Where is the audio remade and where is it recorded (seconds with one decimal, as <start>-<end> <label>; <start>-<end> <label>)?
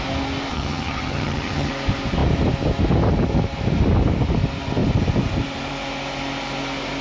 0.0-0.5 recorded; 0.5-1.7 remade; 1.7-7.0 recorded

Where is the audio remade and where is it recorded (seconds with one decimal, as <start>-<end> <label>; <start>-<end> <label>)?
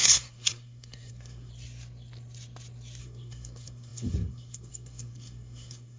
0.0-1.5 remade; 1.5-3.0 recorded; 3.0-6.0 remade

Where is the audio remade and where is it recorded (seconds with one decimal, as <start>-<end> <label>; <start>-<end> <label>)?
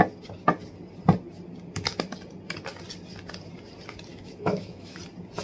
0.0-4.1 recorded; 4.1-5.0 remade; 5.0-5.4 recorded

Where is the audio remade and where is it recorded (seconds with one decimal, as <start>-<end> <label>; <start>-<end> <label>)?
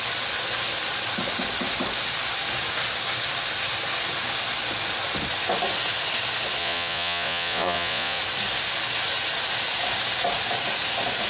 0.0-6.6 recorded; 6.6-8.2 remade; 8.2-11.3 recorded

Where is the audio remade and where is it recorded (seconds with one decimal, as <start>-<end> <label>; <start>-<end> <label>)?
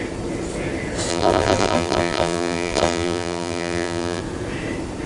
0.0-1.1 recorded; 1.1-4.2 remade; 4.2-5.1 recorded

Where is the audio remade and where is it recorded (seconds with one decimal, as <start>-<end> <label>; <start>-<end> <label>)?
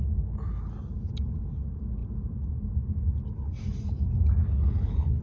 0.0-4.4 recorded; 4.4-5.2 remade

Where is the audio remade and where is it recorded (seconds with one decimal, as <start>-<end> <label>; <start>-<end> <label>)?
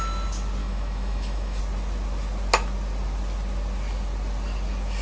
0.0-0.6 recorded; 0.6-1.6 remade; 1.6-5.0 recorded